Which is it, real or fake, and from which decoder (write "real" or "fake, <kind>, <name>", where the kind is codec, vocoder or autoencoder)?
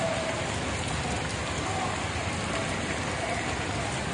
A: real